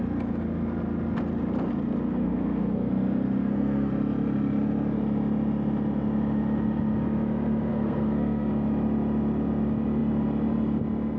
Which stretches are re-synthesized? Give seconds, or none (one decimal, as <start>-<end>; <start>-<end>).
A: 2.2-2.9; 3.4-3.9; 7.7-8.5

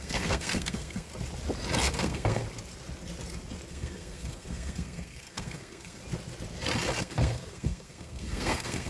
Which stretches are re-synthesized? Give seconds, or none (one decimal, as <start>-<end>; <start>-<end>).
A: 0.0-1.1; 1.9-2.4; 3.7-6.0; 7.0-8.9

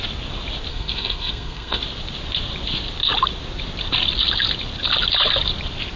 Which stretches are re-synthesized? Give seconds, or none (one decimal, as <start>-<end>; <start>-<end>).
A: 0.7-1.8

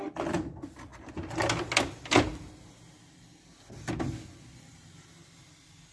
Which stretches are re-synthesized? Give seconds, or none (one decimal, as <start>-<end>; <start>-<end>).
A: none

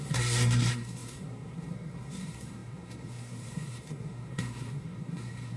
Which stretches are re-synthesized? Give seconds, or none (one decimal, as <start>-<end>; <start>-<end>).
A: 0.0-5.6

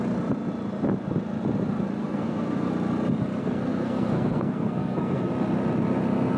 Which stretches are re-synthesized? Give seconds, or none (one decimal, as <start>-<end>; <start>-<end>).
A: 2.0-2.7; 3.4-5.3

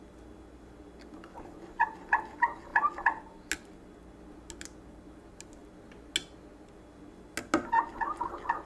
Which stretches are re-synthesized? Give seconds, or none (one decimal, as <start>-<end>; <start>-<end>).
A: none

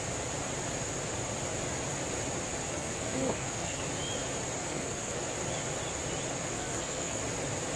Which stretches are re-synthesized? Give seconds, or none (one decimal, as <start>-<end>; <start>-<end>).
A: 2.7-3.8; 4.6-5.2; 6.5-7.2